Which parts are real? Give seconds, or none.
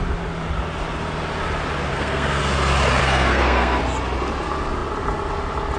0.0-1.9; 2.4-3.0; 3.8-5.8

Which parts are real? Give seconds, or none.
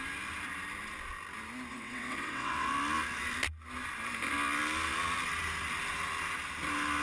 0.0-1.7; 2.7-7.0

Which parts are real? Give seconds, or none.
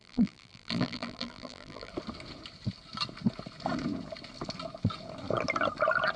1.9-6.2